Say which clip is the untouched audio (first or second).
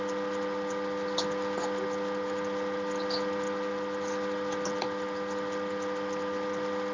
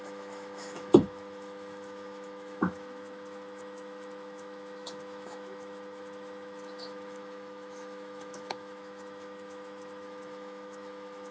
first